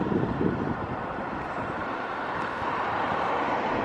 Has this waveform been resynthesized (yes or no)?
yes